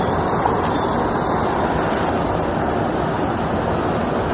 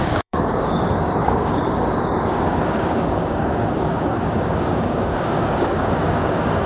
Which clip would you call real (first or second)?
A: first